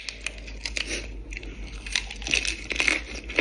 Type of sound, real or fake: real